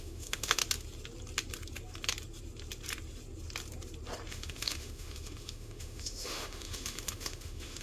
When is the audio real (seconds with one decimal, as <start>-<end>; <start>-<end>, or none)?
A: 0.6-4.3